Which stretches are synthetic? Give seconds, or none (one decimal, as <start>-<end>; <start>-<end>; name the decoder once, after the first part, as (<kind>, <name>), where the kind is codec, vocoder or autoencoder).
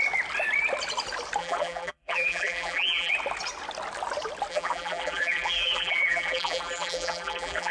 1.4-3.1 (vocoder, BigVGAN v2); 4.5-7.7